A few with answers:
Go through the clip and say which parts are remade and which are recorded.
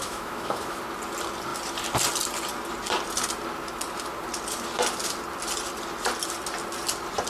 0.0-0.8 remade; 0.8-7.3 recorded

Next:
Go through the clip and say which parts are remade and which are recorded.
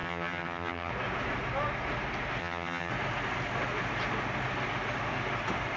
0.0-0.9 remade; 0.9-2.4 recorded; 2.4-2.9 remade; 2.9-5.8 recorded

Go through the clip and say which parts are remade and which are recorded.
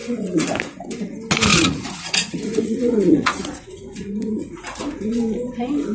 0.0-0.6 remade; 0.6-1.5 recorded; 1.5-4.8 remade; 4.8-5.9 recorded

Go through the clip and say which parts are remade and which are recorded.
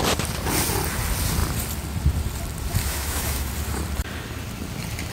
0.0-2.8 recorded; 2.8-3.5 remade; 3.5-5.1 recorded